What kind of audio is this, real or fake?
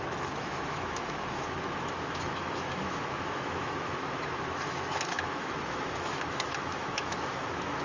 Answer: fake